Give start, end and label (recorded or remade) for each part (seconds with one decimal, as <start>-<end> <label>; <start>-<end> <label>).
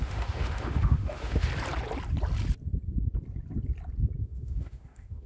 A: 0.0-1.5 remade; 1.5-4.2 recorded; 4.2-5.3 remade